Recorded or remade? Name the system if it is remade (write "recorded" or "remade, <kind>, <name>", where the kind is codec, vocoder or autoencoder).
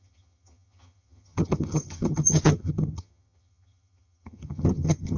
remade, vocoder, HiFi-GAN